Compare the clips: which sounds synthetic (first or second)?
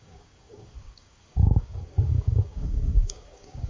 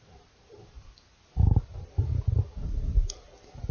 first